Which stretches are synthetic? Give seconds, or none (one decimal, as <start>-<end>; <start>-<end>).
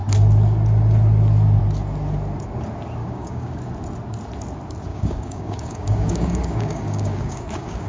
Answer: 3.0-3.6; 4.9-7.9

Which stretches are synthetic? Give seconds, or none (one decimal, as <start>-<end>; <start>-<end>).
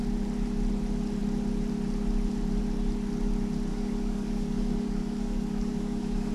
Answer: 3.7-6.3